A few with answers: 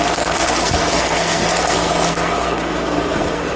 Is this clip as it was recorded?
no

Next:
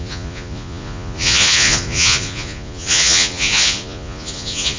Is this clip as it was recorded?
no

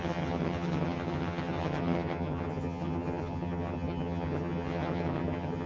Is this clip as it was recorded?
no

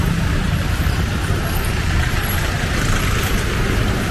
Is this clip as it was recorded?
no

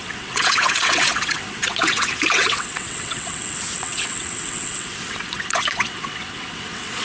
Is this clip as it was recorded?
no